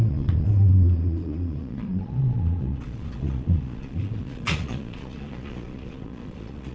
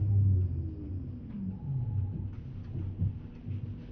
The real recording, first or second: second